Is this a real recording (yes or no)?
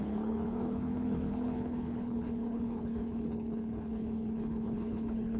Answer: no